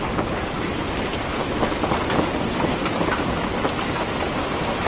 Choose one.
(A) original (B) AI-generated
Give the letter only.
A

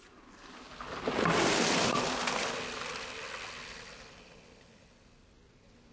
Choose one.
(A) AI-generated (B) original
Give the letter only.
B